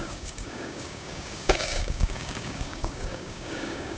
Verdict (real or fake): fake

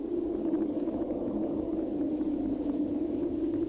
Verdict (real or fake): fake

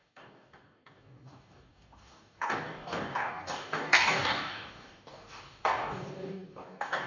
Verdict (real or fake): fake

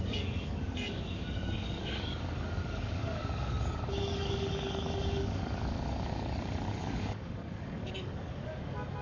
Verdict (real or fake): fake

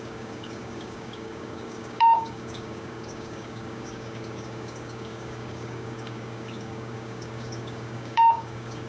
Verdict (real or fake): fake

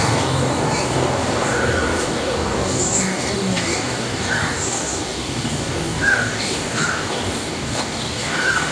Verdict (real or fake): fake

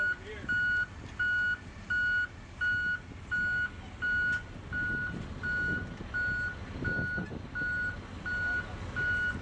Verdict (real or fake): real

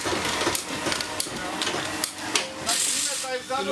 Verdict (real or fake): real